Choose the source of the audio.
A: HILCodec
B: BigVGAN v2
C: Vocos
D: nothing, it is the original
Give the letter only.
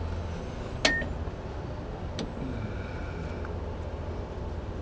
D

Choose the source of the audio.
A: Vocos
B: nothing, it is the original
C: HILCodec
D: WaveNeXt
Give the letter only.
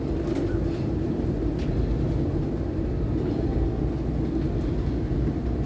B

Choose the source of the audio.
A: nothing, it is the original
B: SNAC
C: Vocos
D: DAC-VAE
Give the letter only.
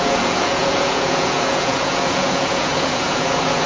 C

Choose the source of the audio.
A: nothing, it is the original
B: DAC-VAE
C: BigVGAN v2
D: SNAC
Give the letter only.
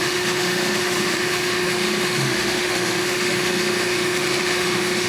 B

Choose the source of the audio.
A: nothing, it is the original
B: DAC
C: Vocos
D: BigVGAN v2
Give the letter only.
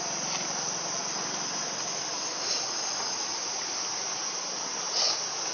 A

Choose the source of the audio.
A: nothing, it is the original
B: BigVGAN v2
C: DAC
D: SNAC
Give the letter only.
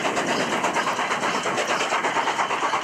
A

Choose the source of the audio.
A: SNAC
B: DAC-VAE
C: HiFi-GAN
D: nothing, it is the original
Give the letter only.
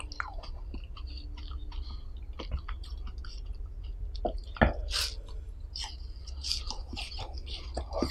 D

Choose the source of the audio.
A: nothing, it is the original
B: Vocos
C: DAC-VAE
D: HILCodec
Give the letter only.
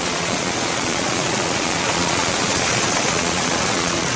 B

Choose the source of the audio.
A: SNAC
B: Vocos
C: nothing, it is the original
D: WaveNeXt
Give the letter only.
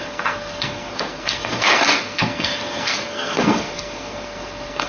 A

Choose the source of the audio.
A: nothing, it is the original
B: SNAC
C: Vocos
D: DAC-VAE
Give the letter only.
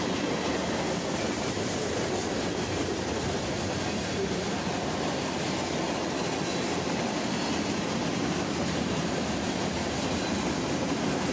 A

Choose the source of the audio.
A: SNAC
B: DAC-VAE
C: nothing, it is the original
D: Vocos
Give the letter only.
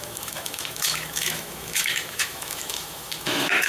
B